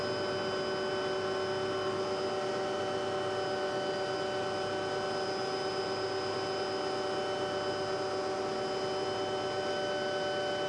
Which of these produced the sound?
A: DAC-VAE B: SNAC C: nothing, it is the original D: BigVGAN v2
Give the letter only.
C